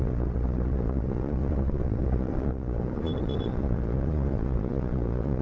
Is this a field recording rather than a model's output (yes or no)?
no